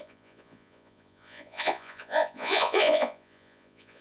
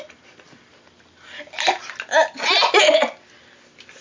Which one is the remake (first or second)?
first